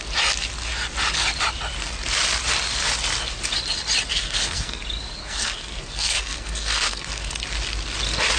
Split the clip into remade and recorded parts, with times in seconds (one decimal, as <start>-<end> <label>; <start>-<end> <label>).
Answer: 0.0-4.1 recorded; 4.1-4.8 remade; 4.8-5.2 recorded; 5.2-7.3 remade; 7.3-8.4 recorded